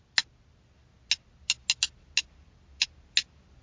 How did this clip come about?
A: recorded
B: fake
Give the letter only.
A